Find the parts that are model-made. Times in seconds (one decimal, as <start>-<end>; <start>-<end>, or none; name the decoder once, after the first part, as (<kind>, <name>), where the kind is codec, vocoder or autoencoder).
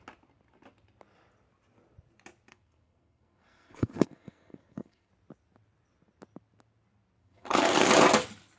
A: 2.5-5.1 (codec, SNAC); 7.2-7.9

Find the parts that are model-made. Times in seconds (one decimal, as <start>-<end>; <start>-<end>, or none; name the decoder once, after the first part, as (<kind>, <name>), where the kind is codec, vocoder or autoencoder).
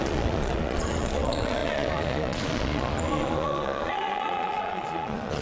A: 0.0-5.4 (vocoder, Vocos)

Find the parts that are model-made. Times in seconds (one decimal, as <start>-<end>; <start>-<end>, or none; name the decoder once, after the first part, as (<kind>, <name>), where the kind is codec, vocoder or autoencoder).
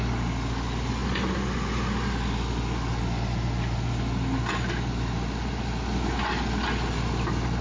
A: none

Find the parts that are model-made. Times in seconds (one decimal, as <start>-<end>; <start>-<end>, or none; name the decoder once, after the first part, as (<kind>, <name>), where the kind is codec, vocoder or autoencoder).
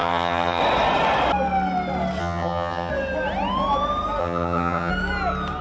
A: 0.0-0.6 (vocoder, HiFi-GAN); 2.2-2.9; 4.2-4.9